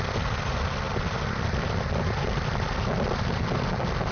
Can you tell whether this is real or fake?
real